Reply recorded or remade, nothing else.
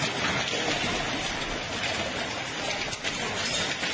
recorded